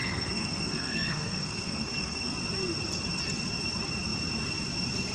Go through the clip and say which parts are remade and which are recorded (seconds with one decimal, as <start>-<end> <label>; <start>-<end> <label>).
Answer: 0.0-2.3 remade; 2.3-5.1 recorded